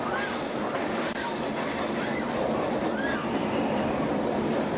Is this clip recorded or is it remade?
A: remade